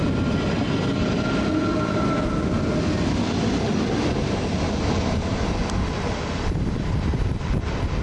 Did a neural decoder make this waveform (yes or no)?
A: no